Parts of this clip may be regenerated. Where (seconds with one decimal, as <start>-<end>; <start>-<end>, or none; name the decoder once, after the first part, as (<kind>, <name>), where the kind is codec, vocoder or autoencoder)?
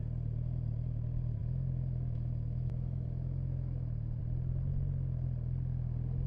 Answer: 1.4-4.2 (autoencoder, DAC-VAE)